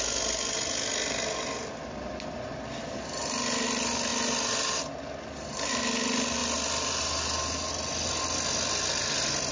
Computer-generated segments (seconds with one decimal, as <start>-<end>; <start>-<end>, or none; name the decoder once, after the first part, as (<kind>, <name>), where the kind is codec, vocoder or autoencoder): none